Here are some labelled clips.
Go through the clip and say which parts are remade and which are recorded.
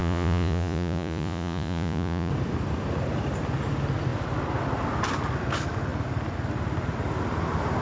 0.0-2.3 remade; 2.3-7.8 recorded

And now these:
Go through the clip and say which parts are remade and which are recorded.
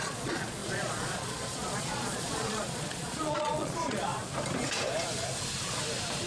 0.0-4.1 remade; 4.1-6.3 recorded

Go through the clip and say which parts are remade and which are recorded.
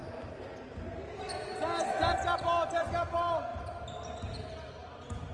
0.0-5.3 recorded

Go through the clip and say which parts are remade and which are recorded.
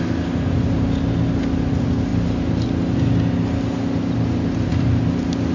0.0-5.5 recorded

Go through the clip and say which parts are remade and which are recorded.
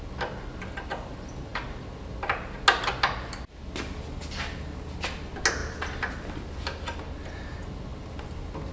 0.0-8.7 recorded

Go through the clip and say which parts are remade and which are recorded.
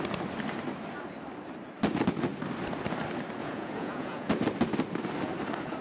0.0-3.4 recorded; 3.4-4.3 remade; 4.3-5.8 recorded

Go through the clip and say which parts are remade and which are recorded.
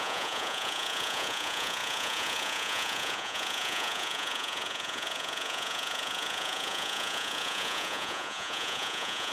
0.0-9.3 remade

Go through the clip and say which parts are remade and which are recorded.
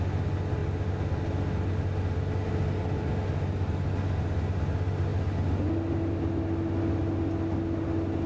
0.0-8.3 recorded